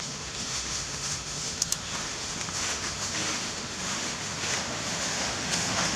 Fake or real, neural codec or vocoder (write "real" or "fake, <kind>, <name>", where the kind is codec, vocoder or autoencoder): fake, autoencoder, DAC-VAE